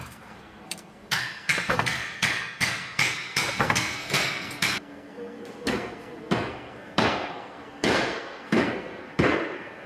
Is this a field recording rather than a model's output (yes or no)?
no